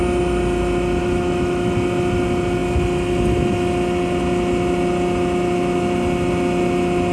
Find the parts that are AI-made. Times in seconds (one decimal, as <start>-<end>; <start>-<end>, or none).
1.0-1.7